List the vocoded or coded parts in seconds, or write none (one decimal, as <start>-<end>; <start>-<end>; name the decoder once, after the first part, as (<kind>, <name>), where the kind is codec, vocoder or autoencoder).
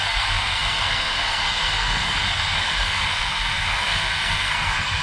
0.0-5.0 (codec, SNAC)